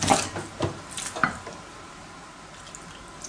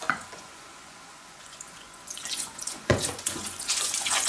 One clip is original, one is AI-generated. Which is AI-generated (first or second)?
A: second